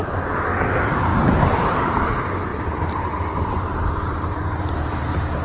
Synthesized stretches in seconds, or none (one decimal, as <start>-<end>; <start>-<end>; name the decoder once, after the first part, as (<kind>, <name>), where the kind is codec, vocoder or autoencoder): 1.1-2.1 (vocoder, BigVGAN v2); 2.5-4.6